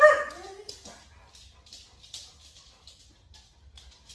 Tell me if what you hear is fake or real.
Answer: real